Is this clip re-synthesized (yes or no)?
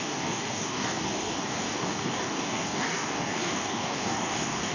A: yes